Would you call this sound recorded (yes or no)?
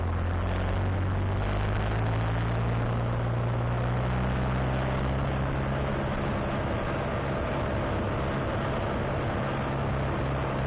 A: yes